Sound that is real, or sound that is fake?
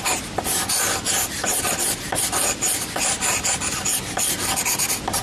real